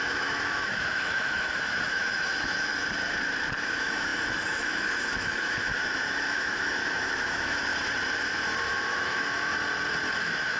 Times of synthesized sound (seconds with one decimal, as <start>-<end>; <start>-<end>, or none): 0.0-2.7; 3.6-7.7; 8.7-9.5; 10.2-10.6